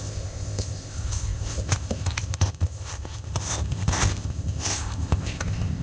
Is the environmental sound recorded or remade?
remade